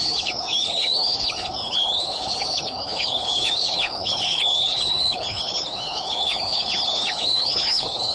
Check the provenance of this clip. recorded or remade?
remade